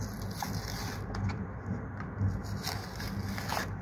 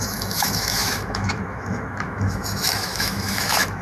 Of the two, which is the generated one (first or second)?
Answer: second